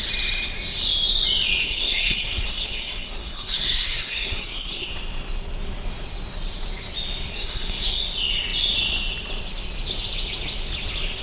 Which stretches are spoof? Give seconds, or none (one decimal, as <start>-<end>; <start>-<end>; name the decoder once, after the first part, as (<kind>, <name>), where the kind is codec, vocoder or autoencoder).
1.6-4.9 (codec, SNAC); 7.3-8.0